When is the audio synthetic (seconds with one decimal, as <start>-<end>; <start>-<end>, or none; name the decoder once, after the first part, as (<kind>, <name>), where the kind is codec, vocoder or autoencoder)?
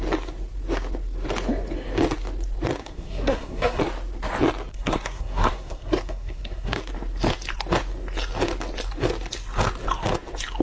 2.8-3.8 (codec, SNAC); 4.7-6.8